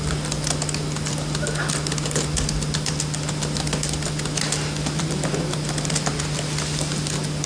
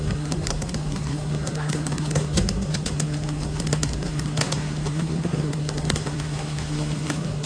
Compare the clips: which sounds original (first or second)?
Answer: first